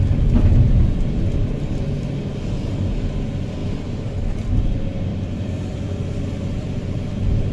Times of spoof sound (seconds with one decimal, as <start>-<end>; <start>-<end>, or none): 1.4-1.9; 5.1-7.1